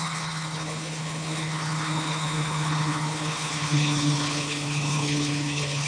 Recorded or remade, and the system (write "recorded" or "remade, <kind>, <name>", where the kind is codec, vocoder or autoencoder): remade, codec, HILCodec